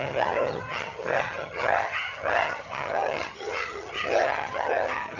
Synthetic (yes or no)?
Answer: yes